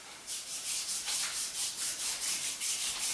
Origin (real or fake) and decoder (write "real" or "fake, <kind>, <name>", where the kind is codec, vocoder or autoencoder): fake, vocoder, BigVGAN v2